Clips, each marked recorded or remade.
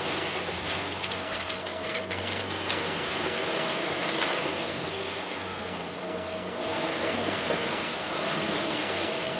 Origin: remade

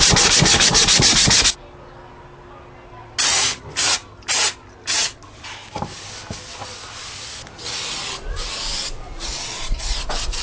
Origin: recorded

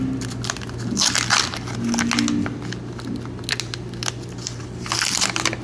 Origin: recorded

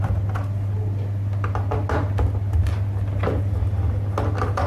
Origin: recorded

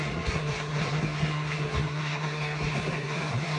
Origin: remade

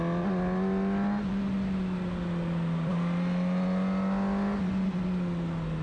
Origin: recorded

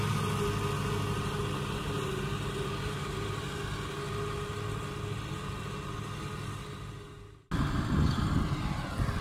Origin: recorded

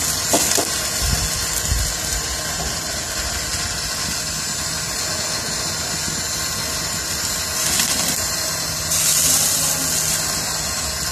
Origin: recorded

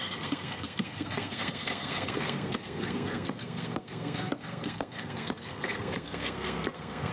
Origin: remade